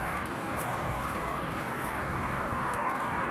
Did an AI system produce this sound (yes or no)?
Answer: yes